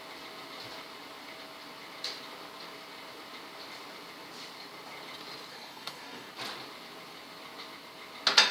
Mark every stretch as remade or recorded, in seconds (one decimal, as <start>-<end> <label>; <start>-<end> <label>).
0.0-5.5 recorded; 5.5-6.3 remade; 6.3-8.5 recorded

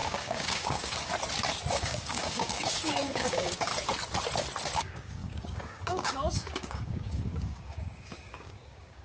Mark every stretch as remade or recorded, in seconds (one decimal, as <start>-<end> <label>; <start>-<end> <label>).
0.0-1.1 remade; 1.1-1.7 recorded; 1.7-3.7 remade; 3.7-4.8 recorded; 4.8-9.0 remade